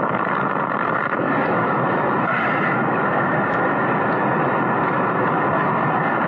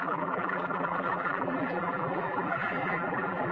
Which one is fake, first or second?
second